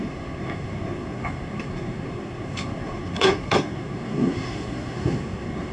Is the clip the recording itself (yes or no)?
no